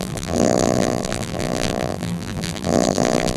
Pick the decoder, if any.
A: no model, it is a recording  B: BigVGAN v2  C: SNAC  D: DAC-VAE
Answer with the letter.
B